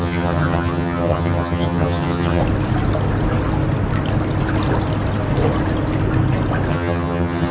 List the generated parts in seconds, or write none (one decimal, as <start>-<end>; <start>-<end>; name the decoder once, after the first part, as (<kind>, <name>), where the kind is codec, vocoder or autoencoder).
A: 0.0-2.4 (vocoder, HiFi-GAN); 6.7-7.5